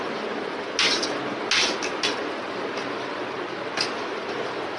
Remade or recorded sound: recorded